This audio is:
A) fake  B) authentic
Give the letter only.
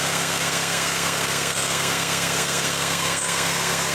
A